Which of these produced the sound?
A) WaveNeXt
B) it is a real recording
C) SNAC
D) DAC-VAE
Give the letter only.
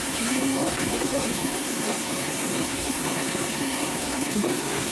C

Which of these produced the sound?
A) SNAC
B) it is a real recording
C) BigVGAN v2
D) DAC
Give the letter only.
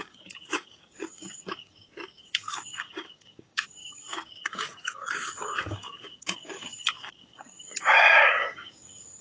D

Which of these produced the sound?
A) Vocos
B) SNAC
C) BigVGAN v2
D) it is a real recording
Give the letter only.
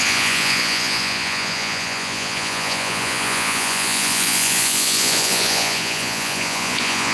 A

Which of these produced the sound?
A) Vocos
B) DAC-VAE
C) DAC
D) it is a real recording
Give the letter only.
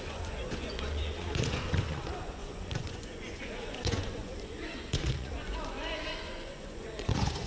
A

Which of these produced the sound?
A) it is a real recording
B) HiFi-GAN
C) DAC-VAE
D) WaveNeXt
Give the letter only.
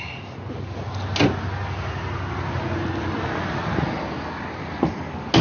A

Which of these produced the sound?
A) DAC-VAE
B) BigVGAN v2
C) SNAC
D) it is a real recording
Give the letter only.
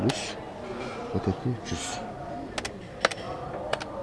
D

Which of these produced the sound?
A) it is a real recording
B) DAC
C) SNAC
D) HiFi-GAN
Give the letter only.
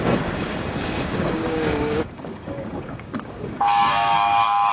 B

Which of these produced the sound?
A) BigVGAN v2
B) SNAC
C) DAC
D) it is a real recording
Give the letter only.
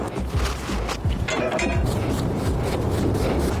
D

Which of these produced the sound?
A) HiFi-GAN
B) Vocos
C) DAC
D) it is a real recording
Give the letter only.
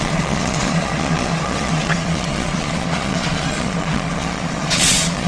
B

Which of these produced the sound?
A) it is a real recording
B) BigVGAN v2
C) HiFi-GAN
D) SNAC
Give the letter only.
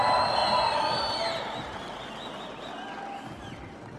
A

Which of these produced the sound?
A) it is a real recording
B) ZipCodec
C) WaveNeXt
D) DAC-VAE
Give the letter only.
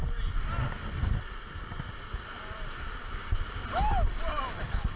A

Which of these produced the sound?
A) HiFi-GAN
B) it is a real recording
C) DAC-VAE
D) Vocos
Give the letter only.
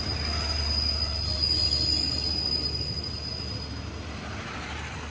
B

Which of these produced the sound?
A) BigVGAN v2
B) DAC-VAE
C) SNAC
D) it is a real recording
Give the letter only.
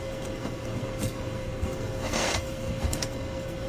C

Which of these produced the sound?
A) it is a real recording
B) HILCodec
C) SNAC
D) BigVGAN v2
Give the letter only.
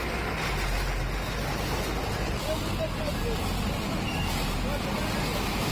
A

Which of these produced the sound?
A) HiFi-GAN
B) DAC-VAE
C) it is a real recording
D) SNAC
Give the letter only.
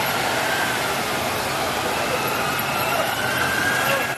C